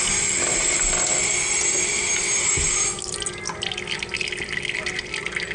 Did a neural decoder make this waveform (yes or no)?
no